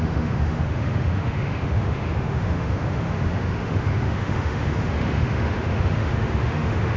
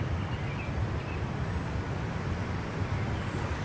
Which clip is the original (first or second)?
second